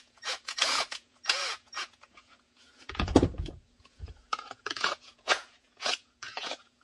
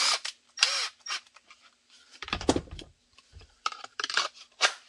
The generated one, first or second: first